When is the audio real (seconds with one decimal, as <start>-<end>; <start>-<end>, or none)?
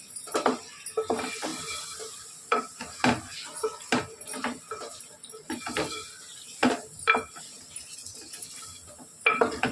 0.0-9.7